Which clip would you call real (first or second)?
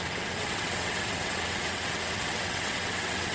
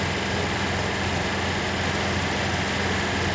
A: second